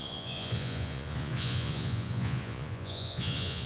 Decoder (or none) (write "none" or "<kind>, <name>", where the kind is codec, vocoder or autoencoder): vocoder, Vocos